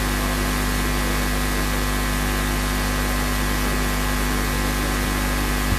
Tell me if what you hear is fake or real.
real